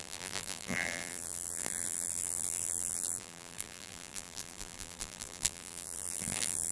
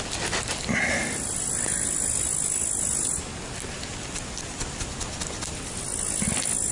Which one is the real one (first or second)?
second